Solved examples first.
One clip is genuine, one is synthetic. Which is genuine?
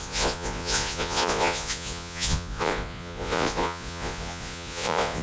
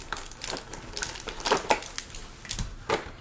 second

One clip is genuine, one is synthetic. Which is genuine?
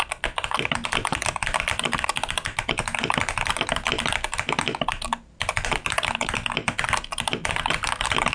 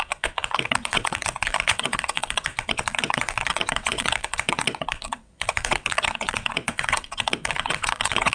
first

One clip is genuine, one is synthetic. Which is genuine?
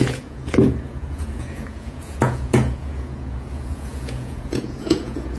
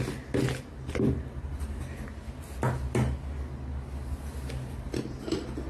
second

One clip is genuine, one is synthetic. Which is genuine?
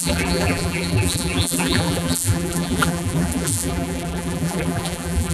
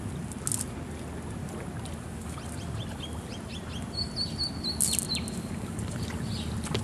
second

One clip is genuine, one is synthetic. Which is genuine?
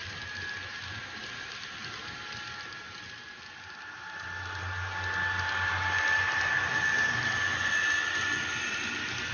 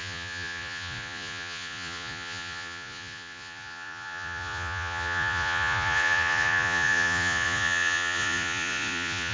first